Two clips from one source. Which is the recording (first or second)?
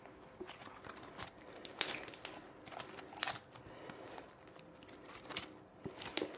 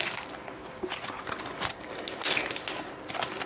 second